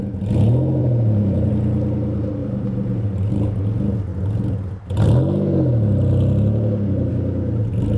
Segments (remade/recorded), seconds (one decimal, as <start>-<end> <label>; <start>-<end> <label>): 0.0-0.8 recorded; 0.8-1.5 remade; 1.5-2.4 recorded; 2.4-3.6 remade; 3.6-8.0 recorded